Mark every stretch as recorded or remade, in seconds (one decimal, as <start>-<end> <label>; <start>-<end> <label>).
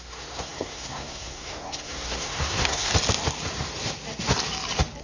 0.0-2.9 remade; 2.9-5.0 recorded